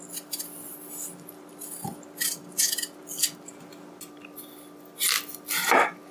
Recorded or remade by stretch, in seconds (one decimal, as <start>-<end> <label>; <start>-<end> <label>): 0.0-6.1 recorded